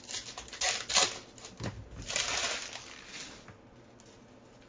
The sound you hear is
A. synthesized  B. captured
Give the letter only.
B